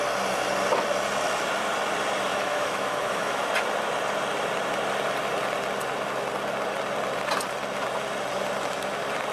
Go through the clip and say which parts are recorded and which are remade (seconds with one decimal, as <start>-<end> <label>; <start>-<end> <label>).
0.0-2.3 recorded; 2.3-3.5 remade; 3.5-9.3 recorded